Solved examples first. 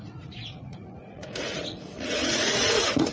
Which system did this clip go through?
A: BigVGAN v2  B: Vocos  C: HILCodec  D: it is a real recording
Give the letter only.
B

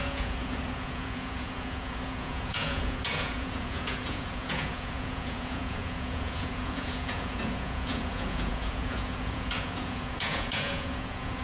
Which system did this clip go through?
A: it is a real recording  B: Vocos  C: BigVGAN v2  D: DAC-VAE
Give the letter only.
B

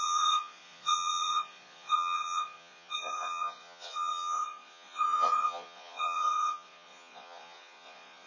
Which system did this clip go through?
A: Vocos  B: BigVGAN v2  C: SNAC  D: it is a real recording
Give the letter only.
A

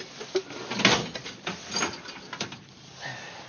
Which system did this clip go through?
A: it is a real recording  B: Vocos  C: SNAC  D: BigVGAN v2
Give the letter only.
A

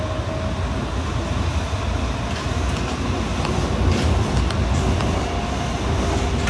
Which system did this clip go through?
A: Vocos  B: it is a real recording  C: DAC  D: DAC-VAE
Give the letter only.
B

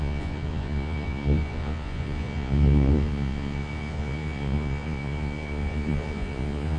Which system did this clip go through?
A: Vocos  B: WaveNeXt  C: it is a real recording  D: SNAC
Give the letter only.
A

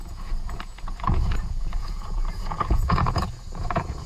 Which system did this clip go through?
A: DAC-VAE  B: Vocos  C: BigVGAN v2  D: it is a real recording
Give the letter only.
B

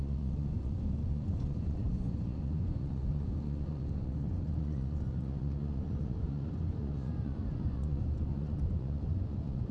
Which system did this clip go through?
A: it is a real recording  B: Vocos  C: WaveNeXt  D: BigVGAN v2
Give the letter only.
B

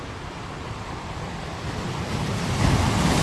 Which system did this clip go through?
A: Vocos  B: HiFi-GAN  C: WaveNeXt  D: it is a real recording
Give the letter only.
D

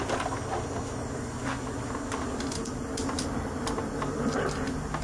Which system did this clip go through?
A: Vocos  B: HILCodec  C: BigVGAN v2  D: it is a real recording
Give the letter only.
D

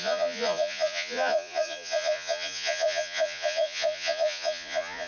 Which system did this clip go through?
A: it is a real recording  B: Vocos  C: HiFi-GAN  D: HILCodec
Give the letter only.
B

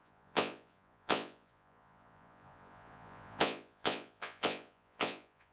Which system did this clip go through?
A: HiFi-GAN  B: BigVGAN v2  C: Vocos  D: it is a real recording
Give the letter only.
C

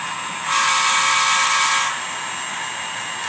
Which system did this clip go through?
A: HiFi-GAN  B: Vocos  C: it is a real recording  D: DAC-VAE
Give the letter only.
C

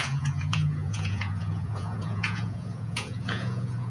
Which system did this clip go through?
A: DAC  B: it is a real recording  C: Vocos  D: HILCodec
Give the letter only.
C